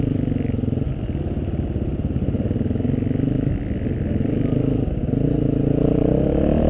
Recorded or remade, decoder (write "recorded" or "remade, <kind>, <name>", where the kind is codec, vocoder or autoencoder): recorded